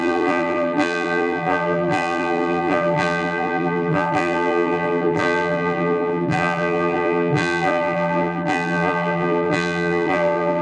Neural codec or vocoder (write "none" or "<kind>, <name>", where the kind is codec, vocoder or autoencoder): vocoder, BigVGAN v2